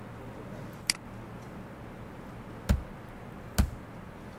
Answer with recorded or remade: recorded